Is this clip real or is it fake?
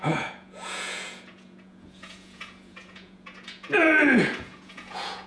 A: fake